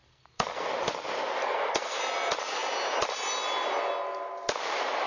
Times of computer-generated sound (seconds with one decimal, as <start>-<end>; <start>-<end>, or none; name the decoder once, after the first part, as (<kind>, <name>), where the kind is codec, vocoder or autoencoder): 0.0-0.7 (codec, SNAC); 1.4-2.0